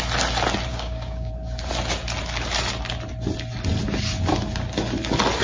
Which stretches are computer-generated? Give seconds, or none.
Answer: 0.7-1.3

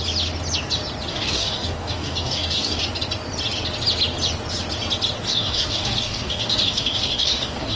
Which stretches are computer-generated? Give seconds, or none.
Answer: 1.1-2.8; 5.3-7.8

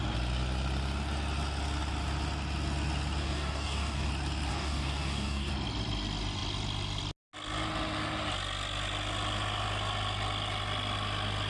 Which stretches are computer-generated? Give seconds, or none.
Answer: 3.2-4.1; 4.5-5.5

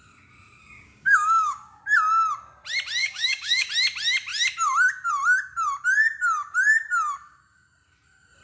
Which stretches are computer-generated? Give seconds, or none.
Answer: 0.6-1.8; 3.0-3.7

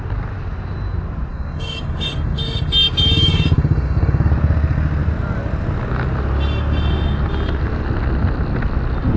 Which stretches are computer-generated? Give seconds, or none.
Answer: 1.3-4.3

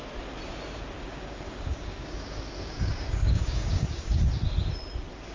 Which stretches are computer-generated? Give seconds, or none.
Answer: 1.0-4.2

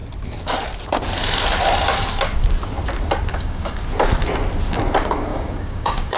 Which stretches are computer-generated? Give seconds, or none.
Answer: 3.3-3.8; 5.3-6.2